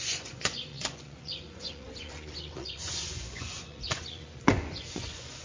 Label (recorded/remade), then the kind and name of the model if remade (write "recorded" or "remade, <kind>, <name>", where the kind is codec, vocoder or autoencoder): remade, vocoder, Vocos